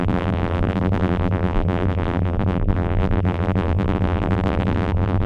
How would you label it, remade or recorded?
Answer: remade